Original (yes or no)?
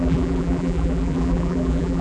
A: no